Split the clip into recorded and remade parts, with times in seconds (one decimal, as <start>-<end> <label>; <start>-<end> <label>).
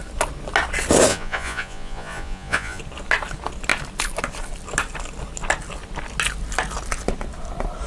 0.0-1.1 recorded; 1.1-2.8 remade; 2.8-7.9 recorded